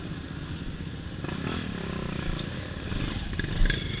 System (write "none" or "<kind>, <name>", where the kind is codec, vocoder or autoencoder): none